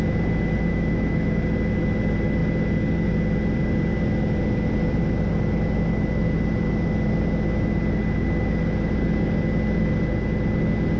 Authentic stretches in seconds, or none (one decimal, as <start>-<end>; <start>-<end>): 0.0-0.7; 1.4-11.0